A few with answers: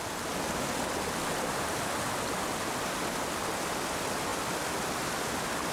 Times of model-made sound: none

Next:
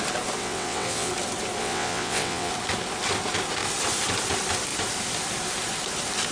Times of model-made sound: 0.4-1.1; 1.6-2.5